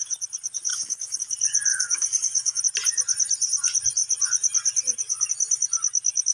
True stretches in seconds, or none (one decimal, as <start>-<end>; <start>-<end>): 0.0-0.7; 1.2-1.7; 2.6-6.3